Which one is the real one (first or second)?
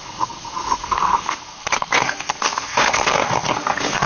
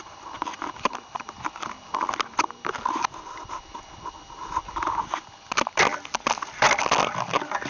second